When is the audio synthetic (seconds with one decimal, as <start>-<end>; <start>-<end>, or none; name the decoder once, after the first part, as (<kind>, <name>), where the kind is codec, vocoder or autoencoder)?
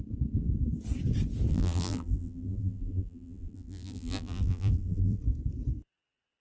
1.5-5.2 (vocoder, BigVGAN v2)